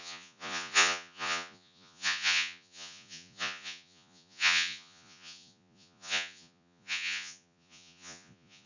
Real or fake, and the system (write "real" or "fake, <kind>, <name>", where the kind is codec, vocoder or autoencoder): fake, vocoder, Vocos